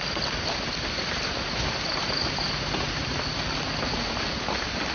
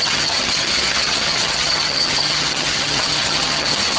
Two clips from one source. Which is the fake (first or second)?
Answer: second